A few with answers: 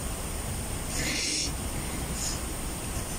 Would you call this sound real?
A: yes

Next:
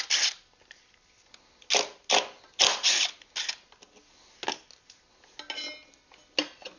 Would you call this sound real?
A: yes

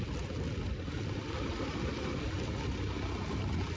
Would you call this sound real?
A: yes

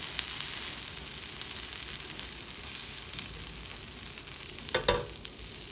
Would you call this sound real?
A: yes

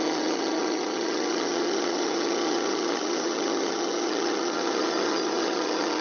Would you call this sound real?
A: no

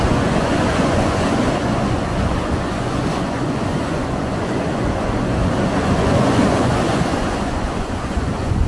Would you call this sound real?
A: no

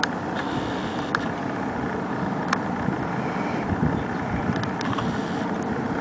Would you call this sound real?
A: no